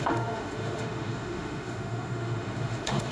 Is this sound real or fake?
fake